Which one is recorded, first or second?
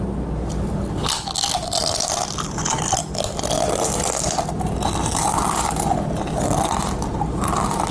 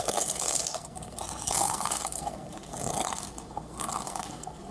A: first